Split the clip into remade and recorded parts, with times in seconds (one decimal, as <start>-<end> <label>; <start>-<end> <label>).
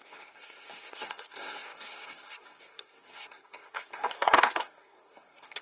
0.0-5.6 remade